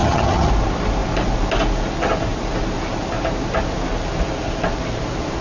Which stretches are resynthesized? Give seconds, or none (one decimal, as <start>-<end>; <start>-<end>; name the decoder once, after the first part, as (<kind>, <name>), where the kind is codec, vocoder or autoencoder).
0.0-0.5 (vocoder, HiFi-GAN)